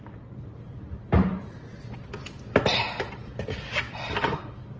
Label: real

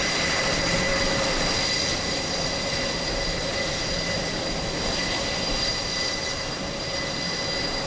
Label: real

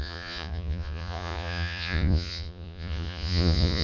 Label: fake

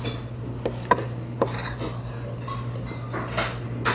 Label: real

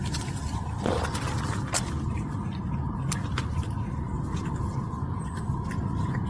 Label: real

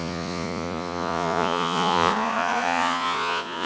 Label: fake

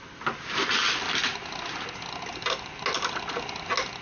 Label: real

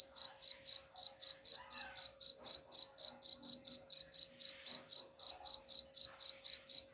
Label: real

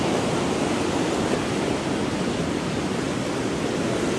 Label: real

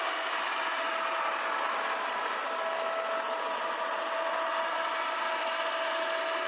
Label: real